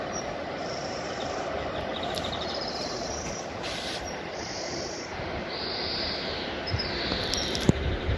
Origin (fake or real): fake